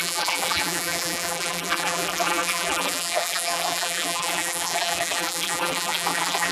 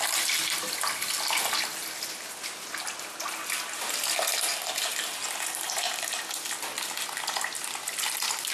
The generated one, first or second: first